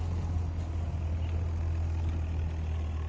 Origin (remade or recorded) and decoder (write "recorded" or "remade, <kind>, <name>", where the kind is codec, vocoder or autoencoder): recorded